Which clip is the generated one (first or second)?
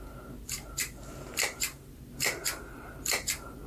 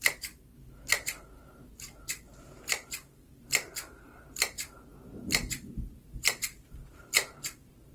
second